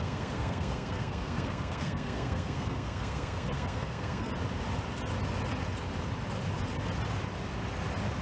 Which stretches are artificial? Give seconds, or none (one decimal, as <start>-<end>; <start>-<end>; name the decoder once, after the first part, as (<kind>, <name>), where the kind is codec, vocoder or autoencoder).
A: 0.0-4.3 (codec, SNAC)